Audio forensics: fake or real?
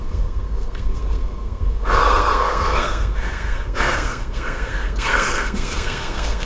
fake